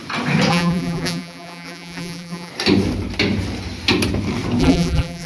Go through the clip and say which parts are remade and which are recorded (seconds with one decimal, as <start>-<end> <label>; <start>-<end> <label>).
0.0-0.5 recorded; 0.5-2.5 remade; 2.5-4.6 recorded; 4.6-5.3 remade